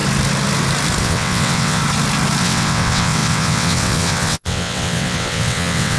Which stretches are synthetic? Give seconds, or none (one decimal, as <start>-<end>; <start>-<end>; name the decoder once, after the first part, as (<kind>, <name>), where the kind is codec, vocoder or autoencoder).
1.0-1.8 (vocoder, WaveNeXt); 2.4-6.0